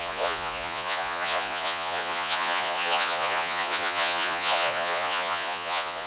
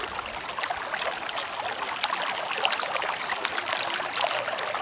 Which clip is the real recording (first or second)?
second